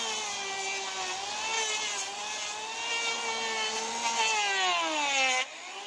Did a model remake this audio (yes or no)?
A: no